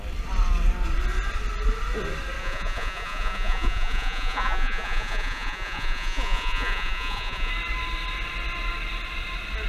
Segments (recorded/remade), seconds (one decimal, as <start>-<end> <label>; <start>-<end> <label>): 0.0-2.4 recorded; 2.4-7.5 remade; 7.5-9.7 recorded